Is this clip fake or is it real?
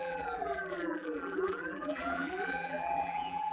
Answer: fake